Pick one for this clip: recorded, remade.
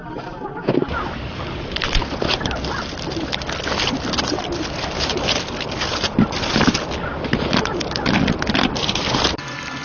recorded